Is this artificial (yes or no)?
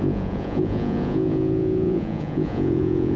yes